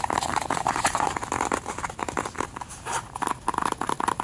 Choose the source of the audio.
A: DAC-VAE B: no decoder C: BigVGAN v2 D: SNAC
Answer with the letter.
B